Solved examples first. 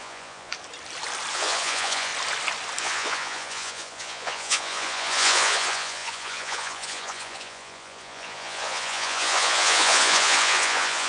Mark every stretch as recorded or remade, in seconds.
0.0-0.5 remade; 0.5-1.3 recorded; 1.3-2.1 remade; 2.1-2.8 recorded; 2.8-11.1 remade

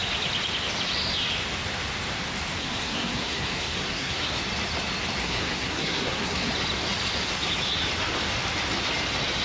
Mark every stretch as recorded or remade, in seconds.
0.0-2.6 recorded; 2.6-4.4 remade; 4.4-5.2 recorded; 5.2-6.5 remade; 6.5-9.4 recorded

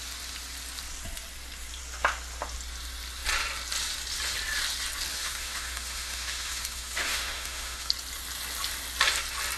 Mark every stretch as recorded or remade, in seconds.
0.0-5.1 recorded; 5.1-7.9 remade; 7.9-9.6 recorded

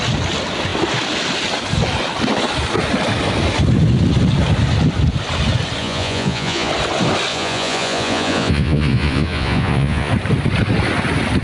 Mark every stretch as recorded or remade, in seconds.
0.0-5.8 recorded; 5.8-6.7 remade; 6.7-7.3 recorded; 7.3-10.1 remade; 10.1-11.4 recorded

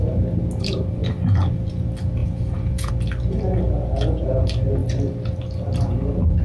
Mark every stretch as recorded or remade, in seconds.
0.0-2.2 recorded; 2.2-2.9 remade; 2.9-6.4 recorded